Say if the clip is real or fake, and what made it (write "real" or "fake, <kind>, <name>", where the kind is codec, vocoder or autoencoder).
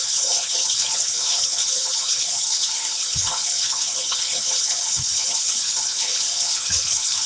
fake, codec, HILCodec